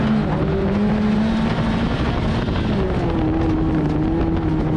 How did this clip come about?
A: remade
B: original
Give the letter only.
B